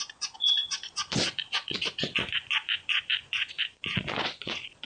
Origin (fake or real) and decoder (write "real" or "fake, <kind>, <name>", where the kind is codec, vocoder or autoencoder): fake, vocoder, Vocos